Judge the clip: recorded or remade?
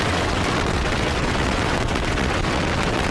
remade